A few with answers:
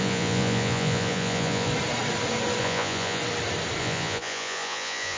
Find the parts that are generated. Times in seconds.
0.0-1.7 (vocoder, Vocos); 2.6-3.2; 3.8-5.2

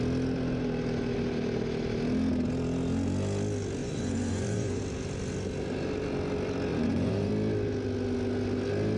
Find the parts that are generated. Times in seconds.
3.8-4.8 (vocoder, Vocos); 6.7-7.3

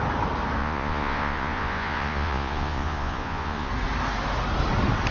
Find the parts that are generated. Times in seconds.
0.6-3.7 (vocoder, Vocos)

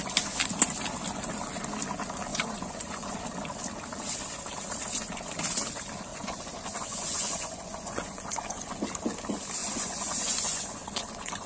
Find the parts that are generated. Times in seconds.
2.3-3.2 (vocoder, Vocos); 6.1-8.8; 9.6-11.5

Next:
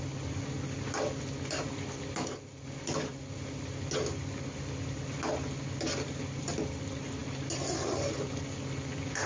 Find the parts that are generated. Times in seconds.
none

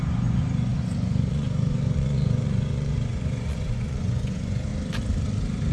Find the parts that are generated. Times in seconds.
0.0-4.7 (vocoder, Vocos)

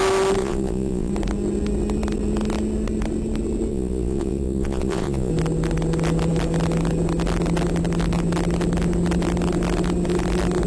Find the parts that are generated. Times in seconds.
0.4-1.1 (vocoder, Vocos); 3.7-5.3